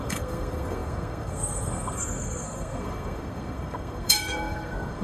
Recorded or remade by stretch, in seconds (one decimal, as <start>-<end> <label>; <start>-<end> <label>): 0.0-5.0 remade